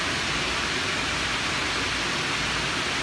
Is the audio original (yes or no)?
yes